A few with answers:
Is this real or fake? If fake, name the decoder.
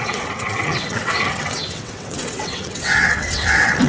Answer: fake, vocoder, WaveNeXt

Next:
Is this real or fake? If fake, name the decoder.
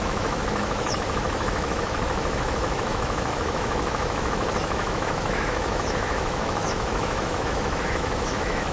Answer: fake, autoencoder, DAC-VAE